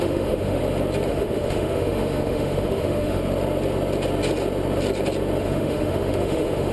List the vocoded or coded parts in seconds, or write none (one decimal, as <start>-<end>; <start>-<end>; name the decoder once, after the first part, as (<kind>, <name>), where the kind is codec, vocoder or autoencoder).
0.0-0.6 (autoencoder, DAC-VAE); 1.1-3.2; 5.4-6.7